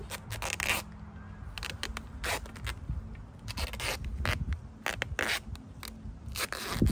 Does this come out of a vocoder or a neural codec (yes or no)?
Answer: no